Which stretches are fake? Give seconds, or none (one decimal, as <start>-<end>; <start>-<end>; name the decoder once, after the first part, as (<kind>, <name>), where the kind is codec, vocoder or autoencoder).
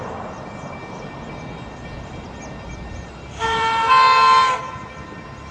3.4-3.9 (vocoder, BigVGAN v2)